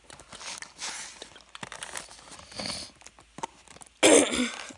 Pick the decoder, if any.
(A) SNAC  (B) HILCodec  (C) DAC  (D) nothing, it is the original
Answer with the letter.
D